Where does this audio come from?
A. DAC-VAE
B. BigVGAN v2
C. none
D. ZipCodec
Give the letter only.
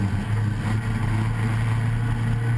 C